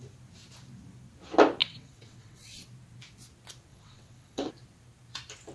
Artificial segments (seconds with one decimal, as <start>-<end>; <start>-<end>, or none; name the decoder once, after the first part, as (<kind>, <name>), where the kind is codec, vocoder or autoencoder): 1.6-2.6 (vocoder, WaveNeXt); 3.7-4.5